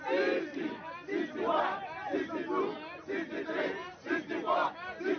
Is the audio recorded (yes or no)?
yes